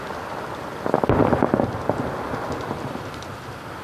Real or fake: real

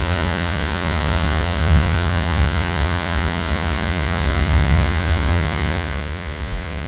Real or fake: fake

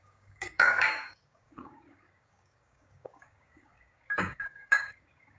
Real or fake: fake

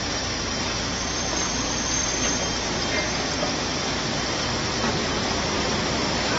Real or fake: real